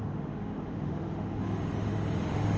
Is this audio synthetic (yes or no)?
yes